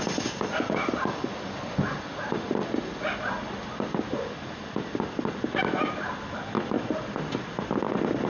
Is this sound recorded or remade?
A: recorded